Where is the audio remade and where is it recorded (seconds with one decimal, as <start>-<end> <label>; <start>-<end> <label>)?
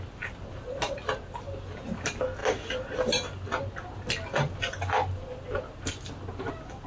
0.0-6.9 recorded